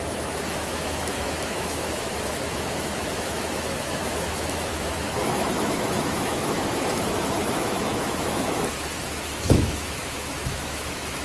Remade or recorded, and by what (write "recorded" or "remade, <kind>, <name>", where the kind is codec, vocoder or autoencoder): remade, autoencoder, DAC-VAE